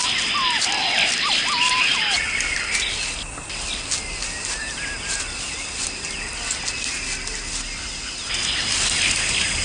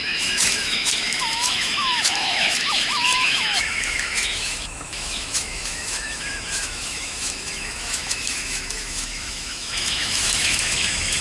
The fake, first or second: second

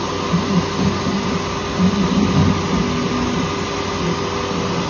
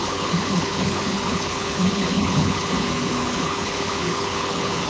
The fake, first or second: second